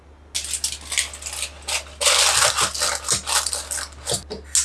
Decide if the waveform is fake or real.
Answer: real